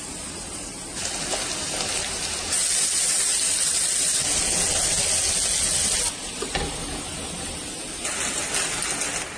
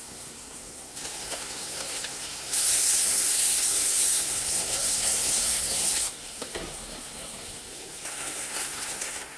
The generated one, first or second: second